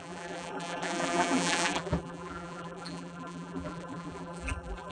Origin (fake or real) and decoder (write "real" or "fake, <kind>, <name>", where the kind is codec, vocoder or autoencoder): fake, vocoder, BigVGAN v2